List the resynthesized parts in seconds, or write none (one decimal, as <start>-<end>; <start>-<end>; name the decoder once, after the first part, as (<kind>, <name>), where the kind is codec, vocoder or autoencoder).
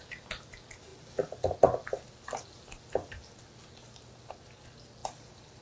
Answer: none